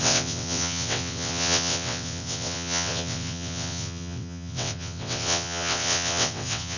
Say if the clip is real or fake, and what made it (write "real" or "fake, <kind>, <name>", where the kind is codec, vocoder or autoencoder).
fake, vocoder, WaveNeXt